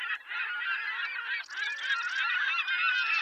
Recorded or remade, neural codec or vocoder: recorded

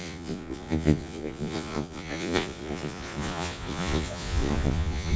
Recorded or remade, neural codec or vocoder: remade, vocoder, Vocos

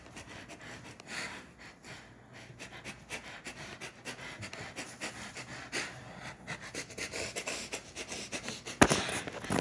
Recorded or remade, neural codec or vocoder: recorded